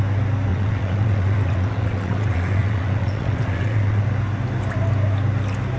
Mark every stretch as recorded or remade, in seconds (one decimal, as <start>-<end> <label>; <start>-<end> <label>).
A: 0.0-0.5 recorded; 0.5-4.0 remade; 4.0-5.8 recorded